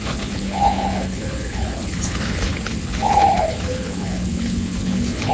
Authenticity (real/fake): fake